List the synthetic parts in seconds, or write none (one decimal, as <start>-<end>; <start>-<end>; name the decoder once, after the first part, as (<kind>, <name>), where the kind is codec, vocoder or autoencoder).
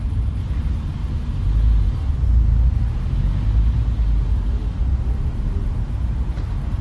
0.0-1.0 (vocoder, BigVGAN v2); 5.1-6.8